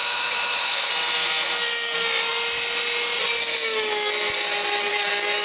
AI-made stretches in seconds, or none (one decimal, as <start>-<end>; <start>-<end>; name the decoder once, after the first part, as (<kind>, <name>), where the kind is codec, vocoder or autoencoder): 0.0-0.9 (autoencoder, DAC-VAE)